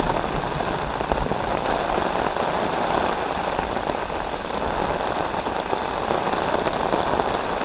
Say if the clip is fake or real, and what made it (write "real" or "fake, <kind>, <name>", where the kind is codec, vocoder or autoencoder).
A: real